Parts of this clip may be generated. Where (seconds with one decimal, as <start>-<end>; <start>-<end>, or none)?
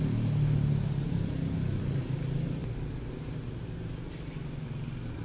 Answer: none